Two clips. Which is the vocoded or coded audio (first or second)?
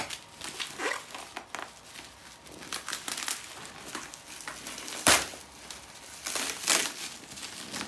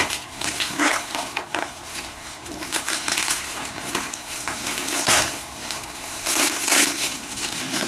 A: second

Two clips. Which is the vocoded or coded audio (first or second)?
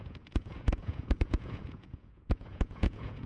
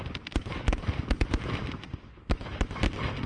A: first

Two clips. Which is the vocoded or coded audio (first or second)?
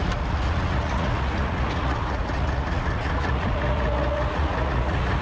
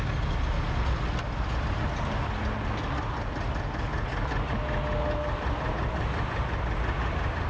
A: first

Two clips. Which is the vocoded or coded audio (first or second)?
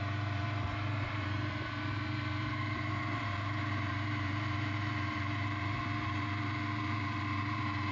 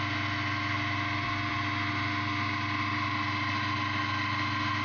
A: first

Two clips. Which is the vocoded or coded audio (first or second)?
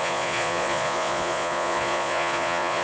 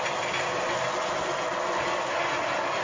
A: first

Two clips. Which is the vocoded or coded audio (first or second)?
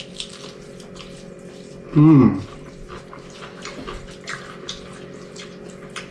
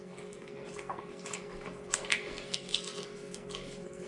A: second